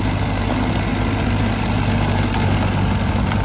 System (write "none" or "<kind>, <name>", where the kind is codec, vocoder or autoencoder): none